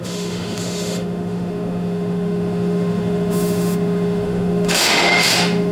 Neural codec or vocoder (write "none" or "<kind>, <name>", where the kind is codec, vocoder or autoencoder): autoencoder, DAC-VAE